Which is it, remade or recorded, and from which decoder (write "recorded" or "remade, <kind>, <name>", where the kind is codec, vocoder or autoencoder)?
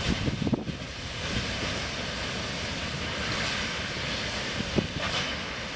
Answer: recorded